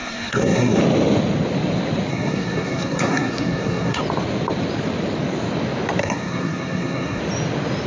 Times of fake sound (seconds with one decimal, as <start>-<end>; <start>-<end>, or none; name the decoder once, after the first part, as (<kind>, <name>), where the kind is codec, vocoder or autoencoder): 0.0-0.8 (codec, SNAC); 2.1-4.0; 6.0-7.2